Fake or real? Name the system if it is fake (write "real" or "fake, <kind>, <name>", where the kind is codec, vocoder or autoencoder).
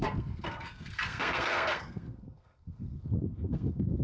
fake, codec, SNAC